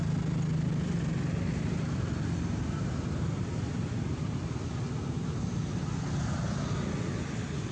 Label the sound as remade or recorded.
recorded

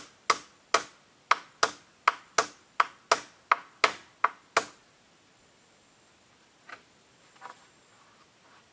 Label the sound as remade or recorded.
recorded